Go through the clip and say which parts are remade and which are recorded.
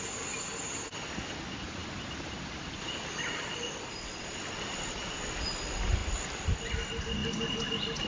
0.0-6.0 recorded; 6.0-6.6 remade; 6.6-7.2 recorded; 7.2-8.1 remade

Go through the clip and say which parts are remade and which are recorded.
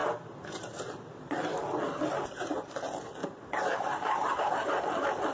0.0-3.2 recorded; 3.2-4.4 remade; 4.4-5.3 recorded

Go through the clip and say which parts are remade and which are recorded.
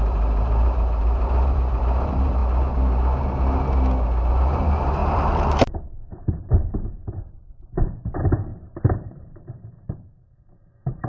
0.0-2.4 remade; 2.4-4.3 recorded; 4.3-11.1 remade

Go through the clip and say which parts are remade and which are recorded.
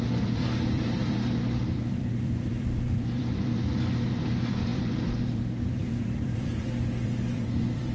0.0-7.9 remade